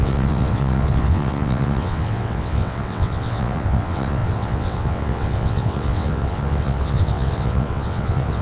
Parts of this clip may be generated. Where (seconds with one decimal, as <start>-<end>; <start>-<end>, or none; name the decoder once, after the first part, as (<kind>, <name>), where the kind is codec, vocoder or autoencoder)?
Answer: 0.0-8.4 (vocoder, WaveNeXt)